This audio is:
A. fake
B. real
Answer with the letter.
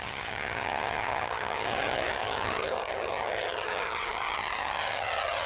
A